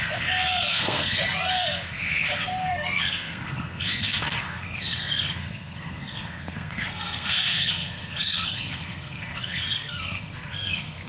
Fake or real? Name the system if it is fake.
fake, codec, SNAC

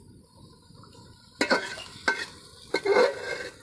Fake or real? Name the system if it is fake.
real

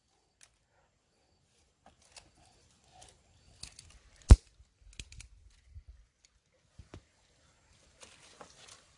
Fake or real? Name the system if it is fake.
real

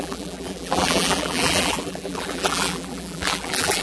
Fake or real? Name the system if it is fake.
fake, vocoder, BigVGAN v2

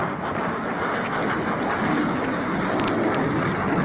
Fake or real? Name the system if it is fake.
real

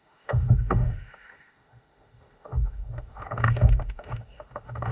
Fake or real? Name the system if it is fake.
fake, autoencoder, DAC-VAE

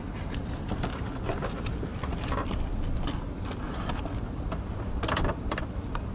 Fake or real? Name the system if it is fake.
real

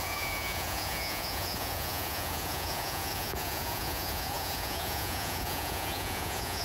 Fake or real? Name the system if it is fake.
fake, vocoder, Vocos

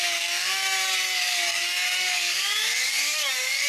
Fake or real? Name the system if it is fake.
fake, codec, DAC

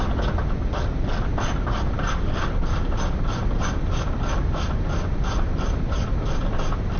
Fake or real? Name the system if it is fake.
real